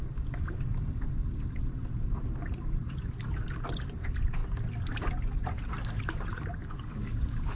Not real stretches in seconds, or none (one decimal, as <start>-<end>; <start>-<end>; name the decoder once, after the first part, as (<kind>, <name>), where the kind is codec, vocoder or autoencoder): 6.6-7.6 (codec, DAC)